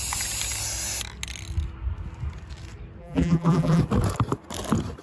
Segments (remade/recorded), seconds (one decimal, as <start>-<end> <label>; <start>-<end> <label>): 0.0-3.0 recorded; 3.0-3.8 remade; 3.8-5.0 recorded